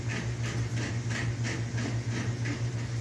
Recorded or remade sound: recorded